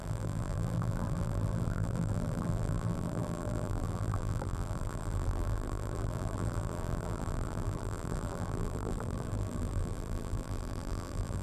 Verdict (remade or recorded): remade